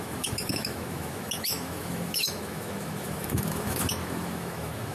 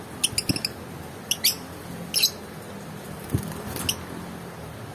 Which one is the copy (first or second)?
first